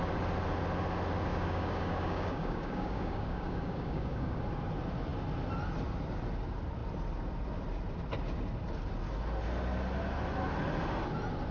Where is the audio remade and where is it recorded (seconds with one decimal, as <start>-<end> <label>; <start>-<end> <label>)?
0.0-1.3 recorded; 1.3-4.4 remade; 4.4-11.5 recorded